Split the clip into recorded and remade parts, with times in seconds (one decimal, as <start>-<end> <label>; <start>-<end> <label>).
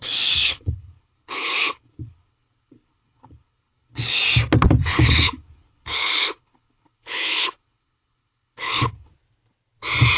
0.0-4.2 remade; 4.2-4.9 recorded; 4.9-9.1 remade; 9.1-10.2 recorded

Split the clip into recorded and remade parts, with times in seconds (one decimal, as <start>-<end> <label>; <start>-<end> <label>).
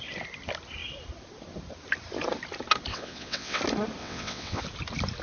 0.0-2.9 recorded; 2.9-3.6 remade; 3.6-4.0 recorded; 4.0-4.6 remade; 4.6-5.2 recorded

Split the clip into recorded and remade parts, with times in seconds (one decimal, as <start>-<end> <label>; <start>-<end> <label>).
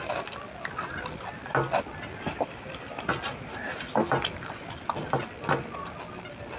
0.0-6.6 recorded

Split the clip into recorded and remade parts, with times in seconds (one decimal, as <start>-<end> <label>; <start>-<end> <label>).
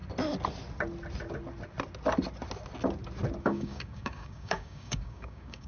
0.0-3.4 recorded; 3.4-5.7 remade